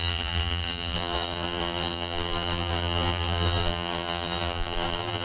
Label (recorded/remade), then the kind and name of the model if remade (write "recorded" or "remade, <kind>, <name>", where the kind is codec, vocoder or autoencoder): remade, vocoder, BigVGAN v2